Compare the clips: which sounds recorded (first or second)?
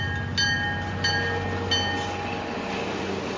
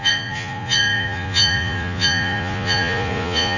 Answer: first